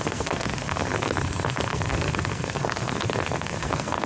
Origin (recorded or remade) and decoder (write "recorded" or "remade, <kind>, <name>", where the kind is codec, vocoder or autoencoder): remade, codec, SNAC